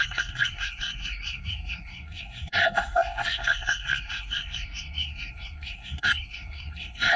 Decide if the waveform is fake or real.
fake